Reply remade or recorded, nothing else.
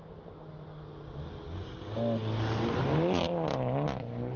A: recorded